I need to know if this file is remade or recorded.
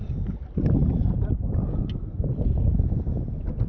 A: recorded